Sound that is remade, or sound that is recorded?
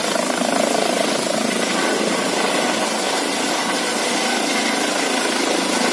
recorded